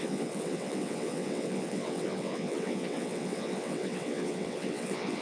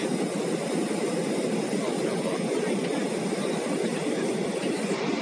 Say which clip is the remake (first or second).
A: first